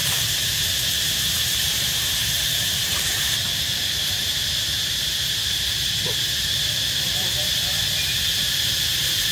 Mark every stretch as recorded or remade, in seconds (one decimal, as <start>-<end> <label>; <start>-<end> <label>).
0.0-9.3 remade

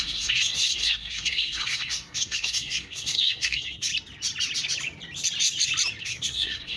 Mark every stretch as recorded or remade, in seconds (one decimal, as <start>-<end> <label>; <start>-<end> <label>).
0.0-3.9 remade; 3.9-6.0 recorded; 6.0-6.8 remade